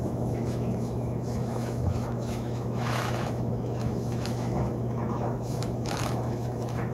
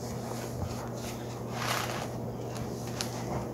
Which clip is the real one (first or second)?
second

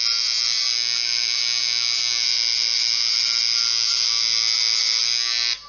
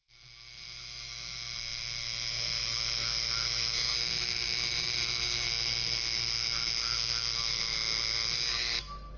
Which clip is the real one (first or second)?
first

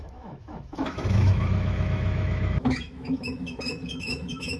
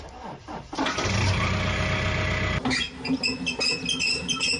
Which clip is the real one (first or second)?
second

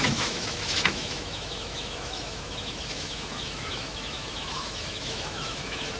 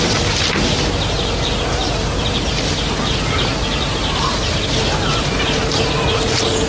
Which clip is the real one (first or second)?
second